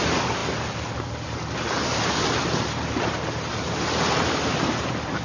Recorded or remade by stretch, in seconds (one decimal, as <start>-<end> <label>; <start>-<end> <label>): 0.0-5.2 recorded